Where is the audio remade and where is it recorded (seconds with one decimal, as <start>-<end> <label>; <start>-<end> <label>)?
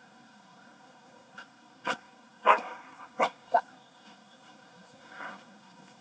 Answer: 0.0-6.0 remade